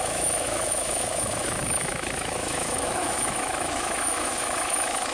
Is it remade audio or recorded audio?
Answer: remade